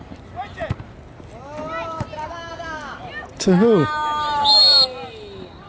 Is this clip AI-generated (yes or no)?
no